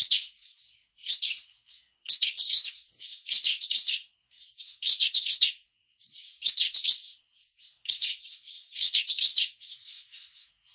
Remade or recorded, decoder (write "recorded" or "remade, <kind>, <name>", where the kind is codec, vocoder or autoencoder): remade, codec, SNAC